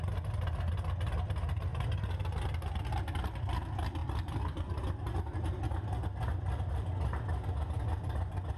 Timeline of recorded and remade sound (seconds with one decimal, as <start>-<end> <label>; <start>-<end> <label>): 0.0-1.7 recorded; 1.7-2.2 remade; 2.2-8.6 recorded